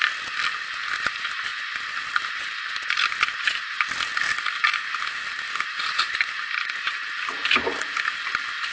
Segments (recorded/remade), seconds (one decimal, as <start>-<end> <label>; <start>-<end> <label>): 0.0-8.7 recorded